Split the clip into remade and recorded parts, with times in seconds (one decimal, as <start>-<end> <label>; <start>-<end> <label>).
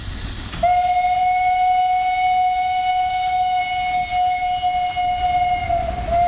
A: 0.0-2.9 recorded; 2.9-3.6 remade; 3.6-6.3 recorded